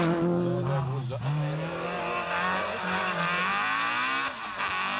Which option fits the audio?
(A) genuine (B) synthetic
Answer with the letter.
A